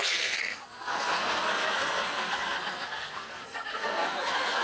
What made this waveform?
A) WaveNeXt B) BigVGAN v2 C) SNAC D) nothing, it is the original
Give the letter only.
C